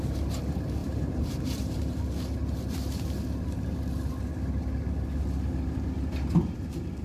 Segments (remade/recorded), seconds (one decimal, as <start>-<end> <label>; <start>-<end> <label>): 0.0-0.8 recorded; 0.8-2.0 remade; 2.0-7.0 recorded